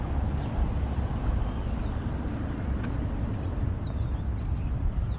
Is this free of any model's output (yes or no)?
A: no